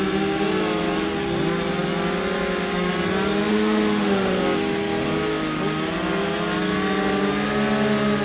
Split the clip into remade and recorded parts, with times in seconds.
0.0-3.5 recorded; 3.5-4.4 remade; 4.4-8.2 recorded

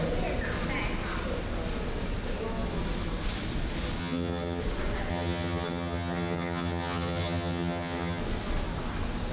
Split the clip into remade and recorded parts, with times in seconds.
0.0-4.0 recorded; 4.0-4.6 remade; 4.6-5.1 recorded; 5.1-8.2 remade; 8.2-9.3 recorded

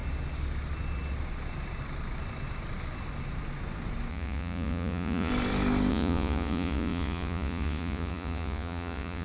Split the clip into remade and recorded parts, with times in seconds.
0.0-4.1 recorded; 4.1-5.3 remade; 5.3-5.9 recorded; 5.9-9.2 remade

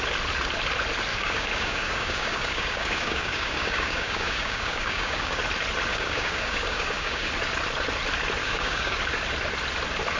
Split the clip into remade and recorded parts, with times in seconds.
0.0-1.1 recorded; 1.1-5.4 remade; 5.4-5.9 recorded; 5.9-7.3 remade; 7.3-8.4 recorded; 8.4-9.0 remade; 9.0-10.2 recorded

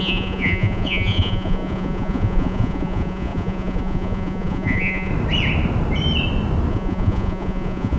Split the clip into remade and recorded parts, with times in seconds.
0.0-5.1 remade; 5.1-6.7 recorded; 6.7-8.0 remade

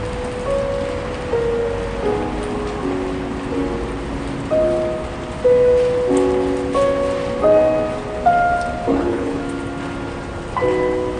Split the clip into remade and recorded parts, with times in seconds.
0.0-8.9 recorded; 8.9-9.4 remade; 9.4-11.2 recorded

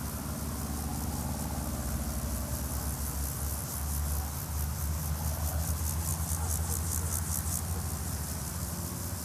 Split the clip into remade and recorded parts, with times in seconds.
0.0-9.2 recorded